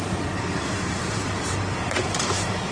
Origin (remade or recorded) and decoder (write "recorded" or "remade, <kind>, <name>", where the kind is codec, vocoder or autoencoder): remade, vocoder, BigVGAN v2